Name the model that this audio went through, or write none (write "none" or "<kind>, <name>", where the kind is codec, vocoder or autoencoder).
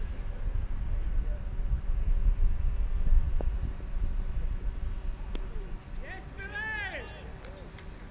none